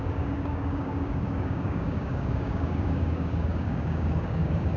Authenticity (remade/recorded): remade